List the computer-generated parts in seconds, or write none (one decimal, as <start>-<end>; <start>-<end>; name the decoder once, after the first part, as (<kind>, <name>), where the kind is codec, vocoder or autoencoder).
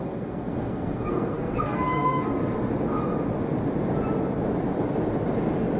0.0-2.3 (codec, SNAC)